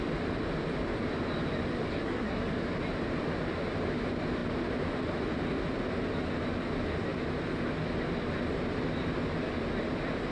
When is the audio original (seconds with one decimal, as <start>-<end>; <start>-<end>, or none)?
0.0-1.9; 2.5-10.3